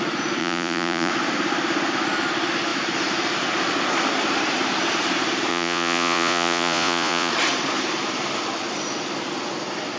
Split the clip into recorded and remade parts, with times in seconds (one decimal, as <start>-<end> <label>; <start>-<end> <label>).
0.0-0.4 recorded; 0.4-1.1 remade; 1.1-5.5 recorded; 5.5-7.3 remade; 7.3-10.0 recorded